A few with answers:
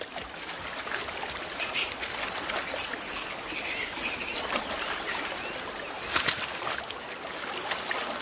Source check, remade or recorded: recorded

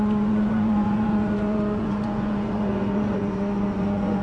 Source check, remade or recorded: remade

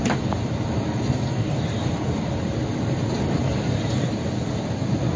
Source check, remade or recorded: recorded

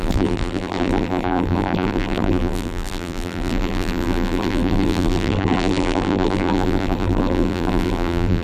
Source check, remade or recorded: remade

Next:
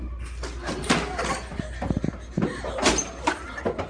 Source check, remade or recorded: recorded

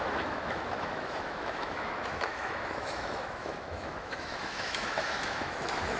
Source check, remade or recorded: remade